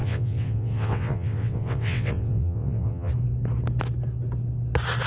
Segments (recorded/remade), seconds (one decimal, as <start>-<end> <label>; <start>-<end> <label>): 0.0-3.1 remade; 3.1-5.1 recorded